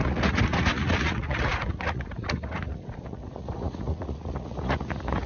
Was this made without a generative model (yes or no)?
no